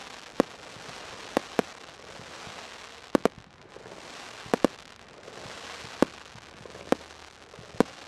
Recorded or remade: recorded